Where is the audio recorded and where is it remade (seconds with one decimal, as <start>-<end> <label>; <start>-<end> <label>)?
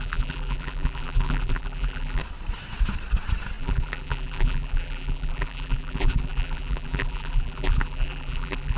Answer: 0.0-2.2 remade; 2.2-3.6 recorded; 3.6-8.8 remade